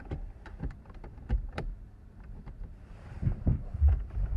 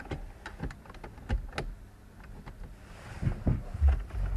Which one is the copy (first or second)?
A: first